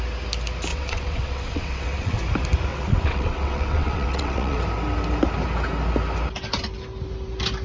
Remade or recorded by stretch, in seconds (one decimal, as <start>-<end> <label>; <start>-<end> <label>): 0.0-0.7 recorded; 0.7-2.2 remade; 2.2-2.7 recorded; 2.7-4.6 remade; 4.6-7.6 recorded